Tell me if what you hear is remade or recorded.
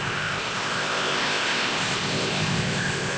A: remade